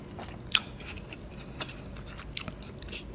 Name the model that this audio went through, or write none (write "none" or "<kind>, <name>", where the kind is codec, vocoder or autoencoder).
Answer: none